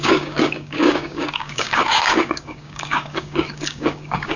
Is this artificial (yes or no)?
yes